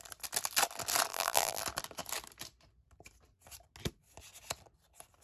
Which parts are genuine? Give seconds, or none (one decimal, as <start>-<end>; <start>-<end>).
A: 0.0-1.1; 1.6-5.2